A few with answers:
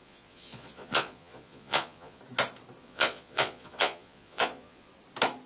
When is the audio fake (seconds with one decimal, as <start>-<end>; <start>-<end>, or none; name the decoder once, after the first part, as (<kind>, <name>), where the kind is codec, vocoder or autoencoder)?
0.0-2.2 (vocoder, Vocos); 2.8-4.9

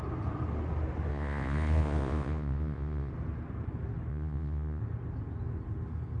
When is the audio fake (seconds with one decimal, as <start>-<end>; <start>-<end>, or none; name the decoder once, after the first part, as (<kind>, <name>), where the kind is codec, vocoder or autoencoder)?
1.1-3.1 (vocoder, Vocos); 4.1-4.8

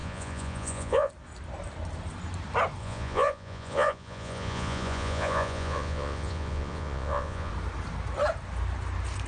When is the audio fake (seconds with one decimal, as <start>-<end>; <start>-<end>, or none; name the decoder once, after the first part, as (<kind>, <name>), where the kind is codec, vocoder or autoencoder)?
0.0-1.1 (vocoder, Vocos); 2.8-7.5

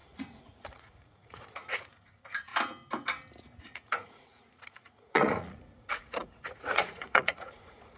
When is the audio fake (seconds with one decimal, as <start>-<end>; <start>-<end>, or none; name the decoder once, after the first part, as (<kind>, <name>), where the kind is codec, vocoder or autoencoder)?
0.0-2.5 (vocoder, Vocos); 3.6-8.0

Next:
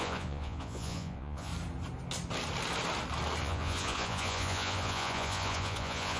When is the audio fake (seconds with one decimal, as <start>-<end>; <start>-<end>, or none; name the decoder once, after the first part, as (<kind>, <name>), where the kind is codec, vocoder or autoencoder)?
0.0-1.5 (vocoder, Vocos); 3.4-6.2

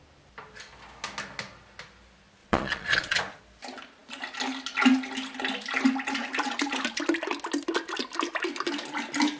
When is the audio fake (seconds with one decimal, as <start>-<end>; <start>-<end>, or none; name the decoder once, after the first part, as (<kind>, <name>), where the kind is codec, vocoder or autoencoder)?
2.4-3.2 (vocoder, Vocos)